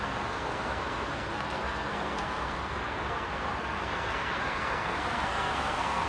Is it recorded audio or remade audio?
remade